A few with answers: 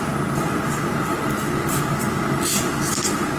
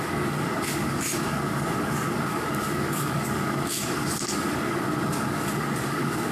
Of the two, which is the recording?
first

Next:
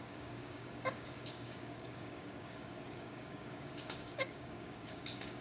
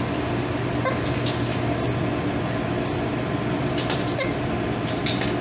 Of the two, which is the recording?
second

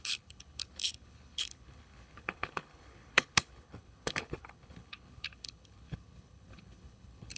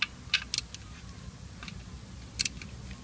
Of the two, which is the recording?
second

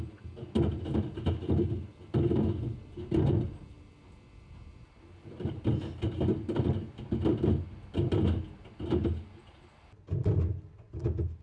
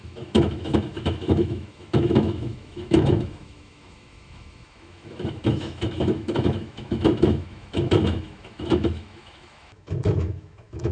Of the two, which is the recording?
first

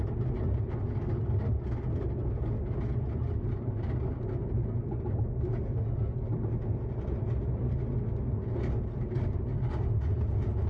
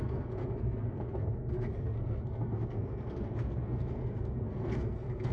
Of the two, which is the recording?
first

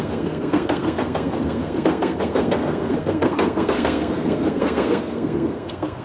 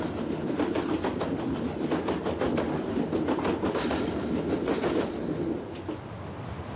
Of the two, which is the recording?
second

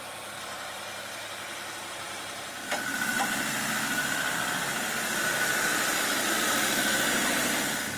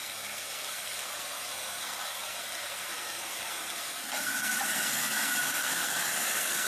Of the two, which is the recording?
first